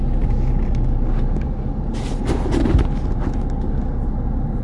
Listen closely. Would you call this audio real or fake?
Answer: real